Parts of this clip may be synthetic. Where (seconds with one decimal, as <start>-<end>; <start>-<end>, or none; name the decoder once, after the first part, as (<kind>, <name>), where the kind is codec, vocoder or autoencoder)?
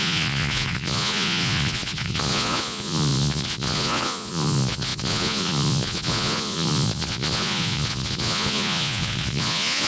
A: 0.0-9.9 (vocoder, Vocos)